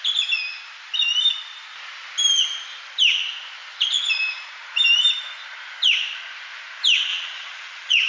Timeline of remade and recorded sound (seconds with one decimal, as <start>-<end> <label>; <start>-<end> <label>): 0.0-7.1 recorded; 7.1-8.1 remade